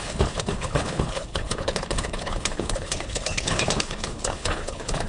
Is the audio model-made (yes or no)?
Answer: yes